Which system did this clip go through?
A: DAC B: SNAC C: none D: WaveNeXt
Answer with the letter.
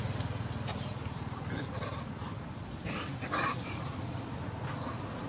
C